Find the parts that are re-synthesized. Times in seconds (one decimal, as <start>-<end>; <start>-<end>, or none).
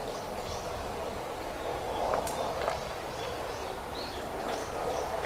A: 0.0-1.2; 1.7-2.2; 4.6-5.3